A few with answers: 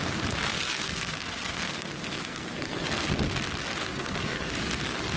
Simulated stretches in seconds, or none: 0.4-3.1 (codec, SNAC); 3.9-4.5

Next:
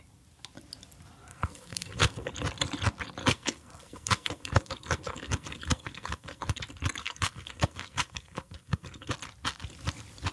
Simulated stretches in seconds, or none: 1.3-2.3 (codec, SNAC); 3.2-6.6; 7.0-9.1